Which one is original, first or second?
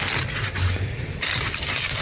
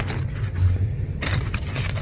second